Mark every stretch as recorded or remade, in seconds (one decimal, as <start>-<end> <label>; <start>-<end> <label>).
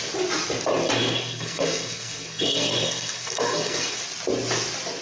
0.0-1.0 recorded; 1.0-4.0 remade; 4.0-5.0 recorded